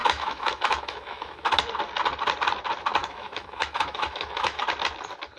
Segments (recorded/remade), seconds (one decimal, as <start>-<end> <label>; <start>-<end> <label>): 0.0-1.6 remade; 1.6-3.0 recorded; 3.0-4.6 remade; 4.6-5.4 recorded